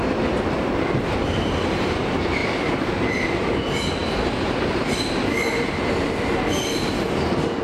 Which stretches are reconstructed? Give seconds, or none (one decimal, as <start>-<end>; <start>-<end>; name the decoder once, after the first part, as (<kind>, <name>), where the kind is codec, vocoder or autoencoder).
none